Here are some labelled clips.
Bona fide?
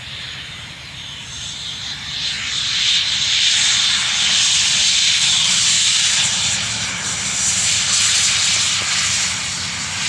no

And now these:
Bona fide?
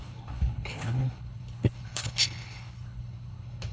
no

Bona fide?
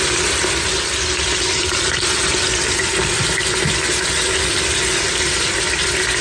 yes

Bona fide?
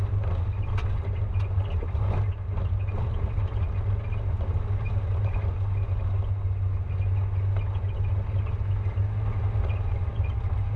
yes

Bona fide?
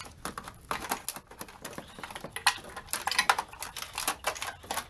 yes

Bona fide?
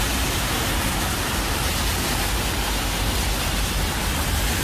yes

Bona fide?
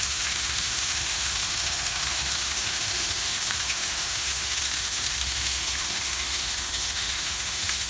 no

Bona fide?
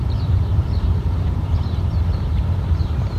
no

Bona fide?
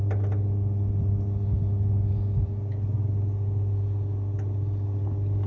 yes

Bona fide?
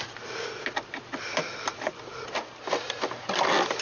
yes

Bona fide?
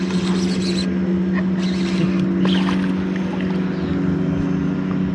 yes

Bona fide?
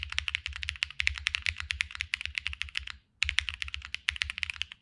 yes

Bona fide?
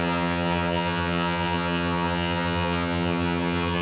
no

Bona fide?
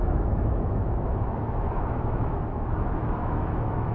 no